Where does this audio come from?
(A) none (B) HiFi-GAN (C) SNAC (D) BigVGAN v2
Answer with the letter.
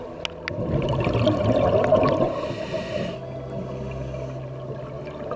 A